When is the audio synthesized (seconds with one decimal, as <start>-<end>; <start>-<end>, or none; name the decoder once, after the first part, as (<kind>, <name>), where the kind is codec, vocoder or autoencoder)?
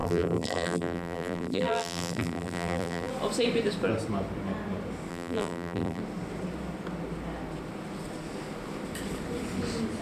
0.0-3.1 (vocoder, BigVGAN v2); 5.1-6.0